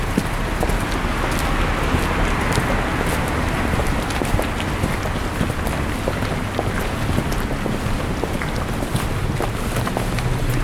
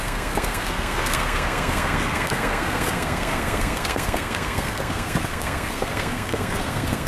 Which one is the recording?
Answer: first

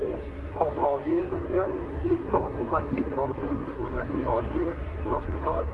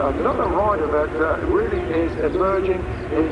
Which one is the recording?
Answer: second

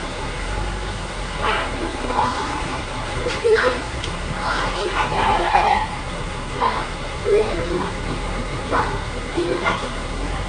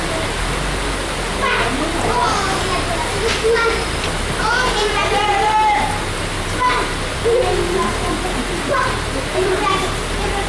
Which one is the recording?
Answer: second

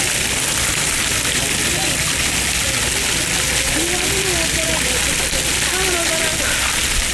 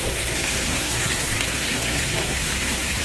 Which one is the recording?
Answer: first